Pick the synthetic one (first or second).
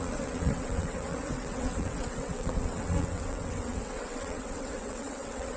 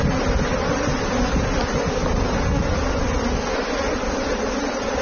first